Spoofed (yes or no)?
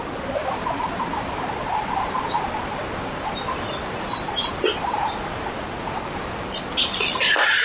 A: no